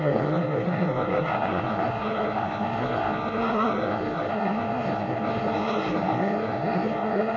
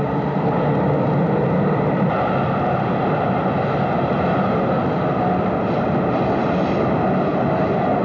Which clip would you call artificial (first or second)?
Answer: first